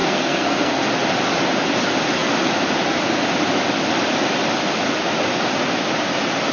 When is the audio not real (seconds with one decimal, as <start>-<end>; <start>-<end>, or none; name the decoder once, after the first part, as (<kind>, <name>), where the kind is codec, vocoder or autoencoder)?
0.0-0.9 (codec, SNAC)